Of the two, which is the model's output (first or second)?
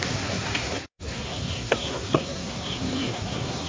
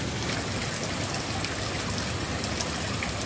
first